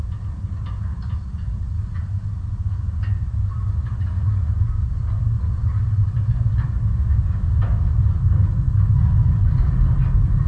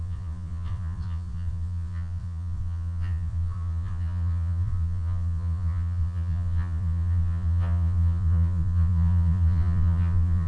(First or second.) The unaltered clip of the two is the first